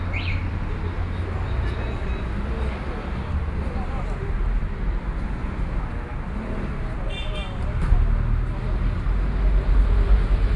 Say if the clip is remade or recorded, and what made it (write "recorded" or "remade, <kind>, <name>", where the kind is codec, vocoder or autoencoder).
recorded